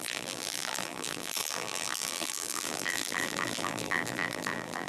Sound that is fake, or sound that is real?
fake